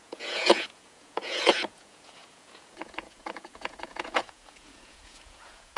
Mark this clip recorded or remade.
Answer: remade